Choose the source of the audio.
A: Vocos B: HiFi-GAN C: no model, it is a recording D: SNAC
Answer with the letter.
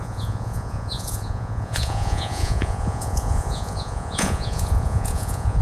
A